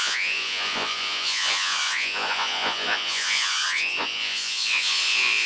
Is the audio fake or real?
fake